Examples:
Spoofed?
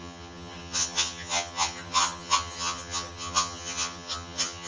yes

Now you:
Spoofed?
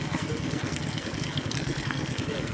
yes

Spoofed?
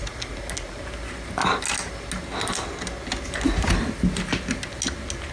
no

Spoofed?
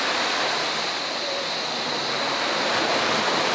no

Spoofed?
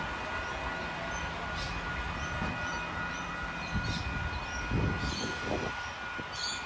no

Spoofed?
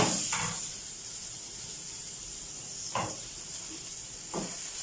yes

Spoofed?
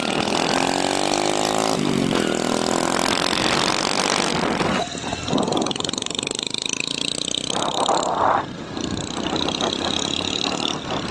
no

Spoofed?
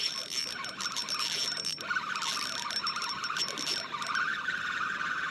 yes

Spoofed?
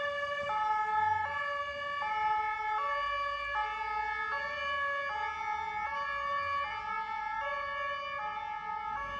no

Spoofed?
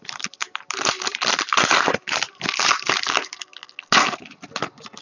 no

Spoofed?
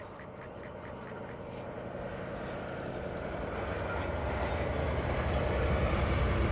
no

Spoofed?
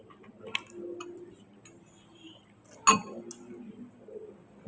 no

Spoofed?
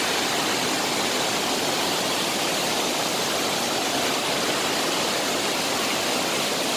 no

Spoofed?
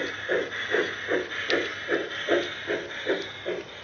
no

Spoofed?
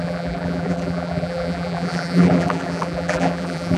yes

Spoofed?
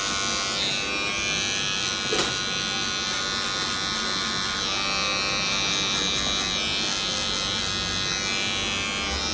no